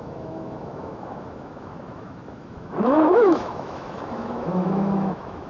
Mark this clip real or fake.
fake